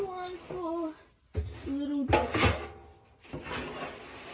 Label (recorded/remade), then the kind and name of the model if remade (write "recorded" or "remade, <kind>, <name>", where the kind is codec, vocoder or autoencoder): recorded